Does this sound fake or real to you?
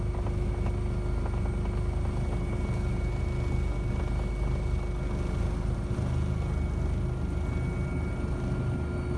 real